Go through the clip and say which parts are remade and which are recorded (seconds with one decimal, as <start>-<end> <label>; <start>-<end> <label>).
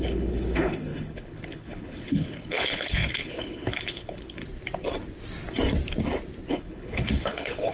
0.0-4.4 remade; 4.4-6.5 recorded; 6.5-7.7 remade